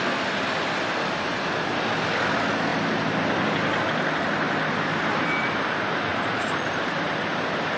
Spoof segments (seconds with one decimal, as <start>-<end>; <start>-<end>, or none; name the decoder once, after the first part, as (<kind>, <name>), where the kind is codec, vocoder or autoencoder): none